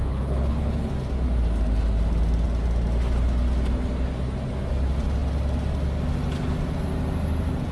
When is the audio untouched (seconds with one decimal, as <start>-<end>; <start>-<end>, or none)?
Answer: 0.9-7.7